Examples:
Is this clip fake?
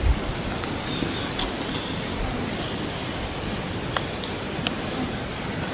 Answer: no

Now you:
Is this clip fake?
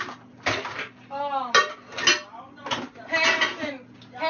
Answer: no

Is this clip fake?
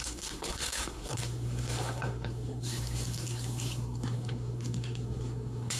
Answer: yes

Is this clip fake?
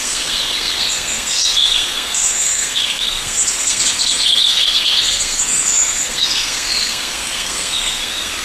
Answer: yes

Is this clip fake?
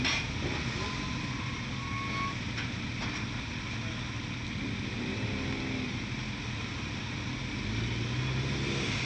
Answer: no